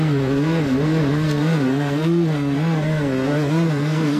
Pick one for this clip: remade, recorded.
remade